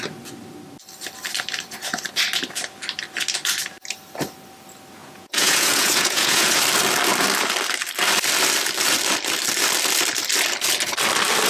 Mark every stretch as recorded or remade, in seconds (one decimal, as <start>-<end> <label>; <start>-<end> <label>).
0.0-5.0 recorded; 5.0-6.6 remade; 6.6-11.5 recorded